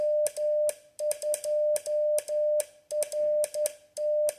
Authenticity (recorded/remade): recorded